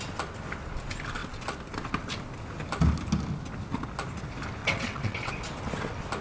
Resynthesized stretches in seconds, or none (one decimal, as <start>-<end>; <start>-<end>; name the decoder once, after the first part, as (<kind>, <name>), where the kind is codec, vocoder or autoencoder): 4.6-5.3 (vocoder, WaveNeXt)